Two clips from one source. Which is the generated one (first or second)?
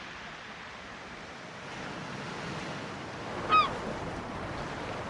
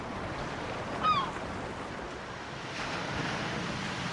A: second